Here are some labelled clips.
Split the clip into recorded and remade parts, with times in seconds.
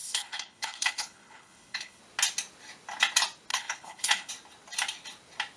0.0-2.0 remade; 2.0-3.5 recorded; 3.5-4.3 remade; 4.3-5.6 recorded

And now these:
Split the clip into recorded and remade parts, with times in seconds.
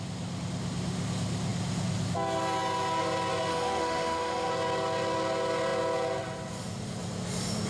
0.0-3.5 recorded; 3.5-4.5 remade; 4.5-7.7 recorded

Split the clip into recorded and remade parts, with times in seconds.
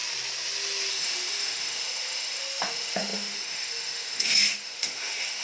0.0-0.9 recorded; 0.9-5.4 remade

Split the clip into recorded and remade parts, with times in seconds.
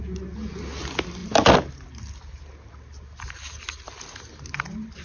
0.0-5.0 recorded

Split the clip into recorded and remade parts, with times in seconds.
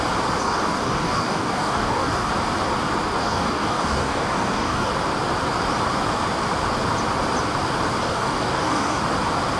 0.0-0.4 recorded; 0.4-2.3 remade; 2.3-3.2 recorded; 3.2-4.9 remade; 4.9-8.0 recorded; 8.0-9.0 remade; 9.0-9.6 recorded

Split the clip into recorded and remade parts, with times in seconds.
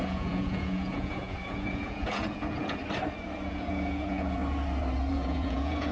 0.0-2.8 remade; 2.8-3.5 recorded; 3.5-4.4 remade; 4.4-5.1 recorded; 5.1-5.9 remade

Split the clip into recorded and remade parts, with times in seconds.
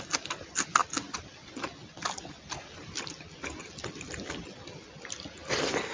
0.0-5.9 recorded